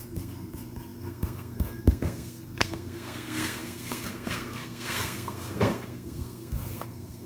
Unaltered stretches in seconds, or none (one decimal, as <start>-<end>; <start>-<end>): none